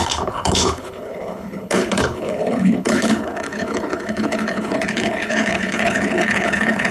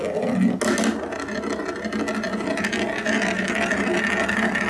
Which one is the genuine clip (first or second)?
second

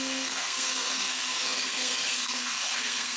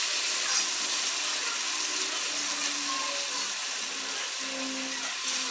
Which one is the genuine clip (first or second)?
second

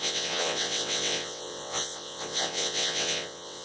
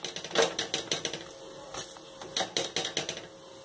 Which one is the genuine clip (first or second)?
second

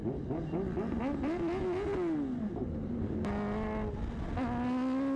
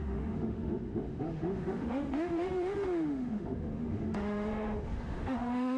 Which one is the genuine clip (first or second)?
first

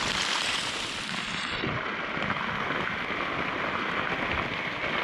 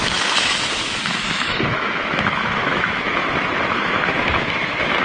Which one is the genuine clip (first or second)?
first